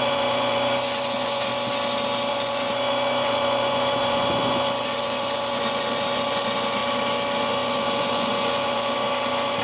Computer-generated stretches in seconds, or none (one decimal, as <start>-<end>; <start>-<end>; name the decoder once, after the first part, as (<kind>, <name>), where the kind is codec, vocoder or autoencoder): 0.0-1.5 (vocoder, Vocos); 2.3-6.8; 7.4-9.6